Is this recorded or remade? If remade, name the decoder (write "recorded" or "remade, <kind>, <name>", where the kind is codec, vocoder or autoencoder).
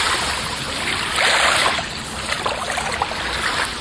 recorded